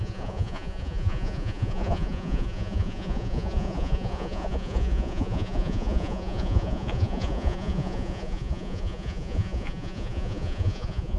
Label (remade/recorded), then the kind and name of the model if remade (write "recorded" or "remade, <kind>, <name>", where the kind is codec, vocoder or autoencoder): remade, vocoder, Vocos